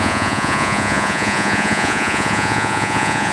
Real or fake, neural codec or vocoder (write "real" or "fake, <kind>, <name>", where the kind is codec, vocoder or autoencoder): fake, vocoder, Vocos